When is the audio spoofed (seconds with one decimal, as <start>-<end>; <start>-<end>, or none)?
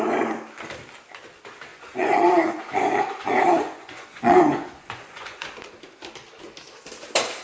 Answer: 1.7-5.5